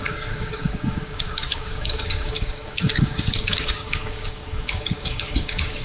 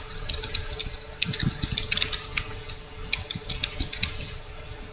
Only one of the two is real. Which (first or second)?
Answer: second